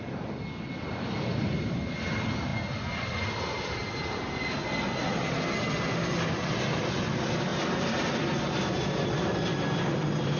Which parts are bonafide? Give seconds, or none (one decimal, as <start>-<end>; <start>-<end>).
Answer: 0.0-10.4